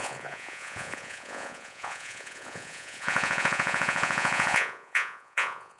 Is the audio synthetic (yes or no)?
yes